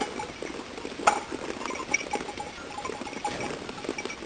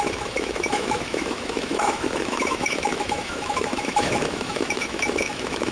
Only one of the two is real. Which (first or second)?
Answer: first